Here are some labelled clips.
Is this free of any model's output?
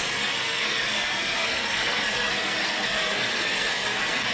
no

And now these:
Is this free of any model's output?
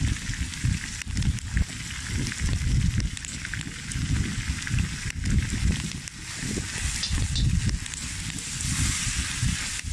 yes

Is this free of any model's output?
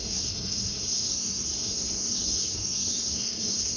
no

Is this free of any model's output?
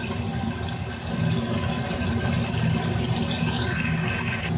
yes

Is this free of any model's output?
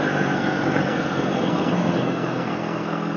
no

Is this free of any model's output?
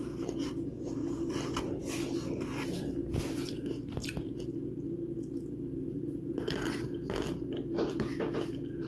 yes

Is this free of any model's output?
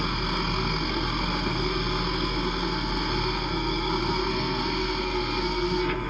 no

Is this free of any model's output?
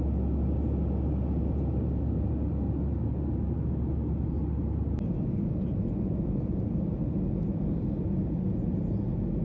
yes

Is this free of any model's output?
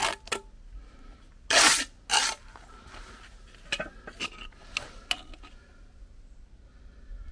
yes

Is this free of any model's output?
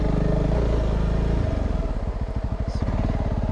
yes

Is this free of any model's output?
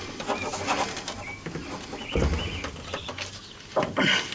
yes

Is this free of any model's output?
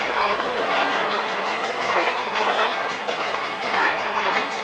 no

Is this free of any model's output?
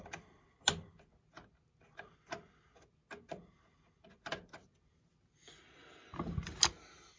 yes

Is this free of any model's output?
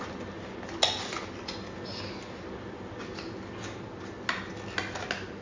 yes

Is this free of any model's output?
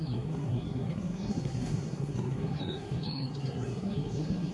no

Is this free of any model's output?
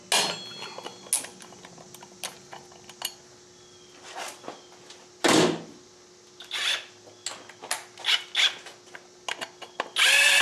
yes